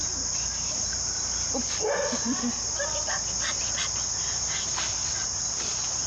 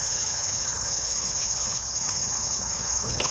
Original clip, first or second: first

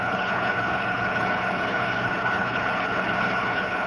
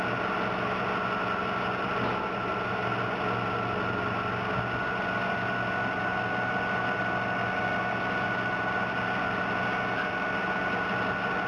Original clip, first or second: second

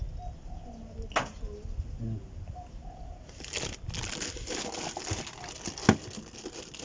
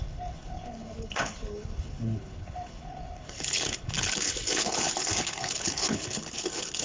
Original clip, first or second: first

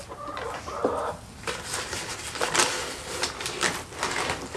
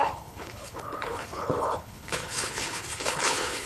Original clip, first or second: first